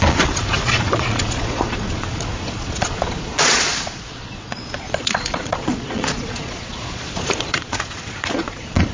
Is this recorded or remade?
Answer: remade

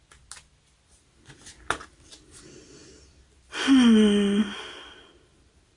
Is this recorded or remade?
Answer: recorded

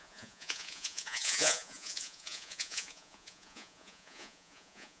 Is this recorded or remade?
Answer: remade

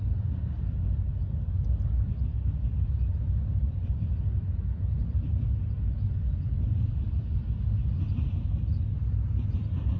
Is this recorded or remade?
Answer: recorded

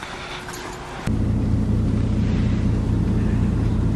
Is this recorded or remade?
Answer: recorded